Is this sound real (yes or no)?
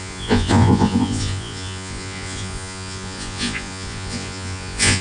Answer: no